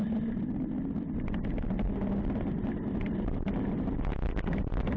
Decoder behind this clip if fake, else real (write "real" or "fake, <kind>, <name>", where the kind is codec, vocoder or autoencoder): real